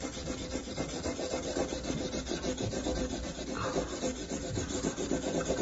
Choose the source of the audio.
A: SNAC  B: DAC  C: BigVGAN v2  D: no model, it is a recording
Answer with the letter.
D